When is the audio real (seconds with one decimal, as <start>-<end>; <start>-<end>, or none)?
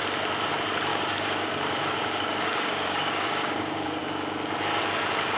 0.0-0.9; 4.0-5.4